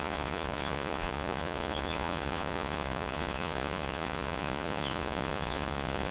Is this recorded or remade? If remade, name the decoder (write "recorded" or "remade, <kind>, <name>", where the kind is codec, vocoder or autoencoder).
remade, vocoder, Vocos